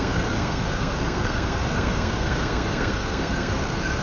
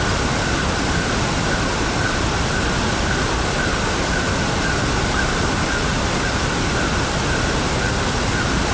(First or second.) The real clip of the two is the second